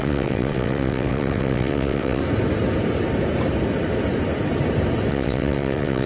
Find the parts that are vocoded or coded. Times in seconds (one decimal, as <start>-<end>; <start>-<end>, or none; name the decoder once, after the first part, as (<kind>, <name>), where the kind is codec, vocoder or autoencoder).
0.0-2.2 (vocoder, WaveNeXt); 5.1-6.1